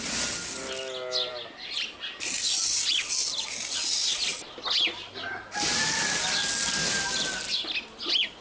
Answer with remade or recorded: recorded